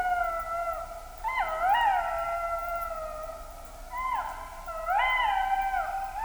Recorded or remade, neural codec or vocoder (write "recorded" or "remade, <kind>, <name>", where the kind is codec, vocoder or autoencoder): recorded